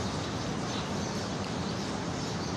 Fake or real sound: real